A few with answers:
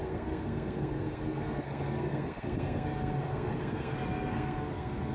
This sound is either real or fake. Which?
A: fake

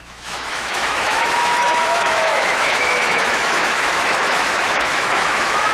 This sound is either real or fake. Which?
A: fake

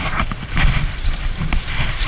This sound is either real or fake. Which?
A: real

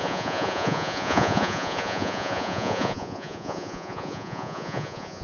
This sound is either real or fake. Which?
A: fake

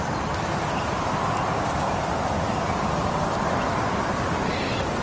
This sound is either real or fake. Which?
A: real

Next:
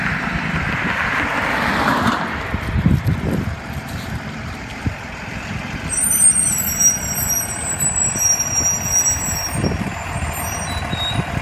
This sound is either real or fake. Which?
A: fake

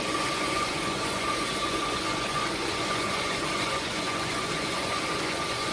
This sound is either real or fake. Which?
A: fake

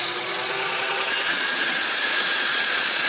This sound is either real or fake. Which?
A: fake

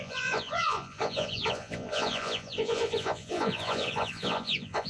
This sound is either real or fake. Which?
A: fake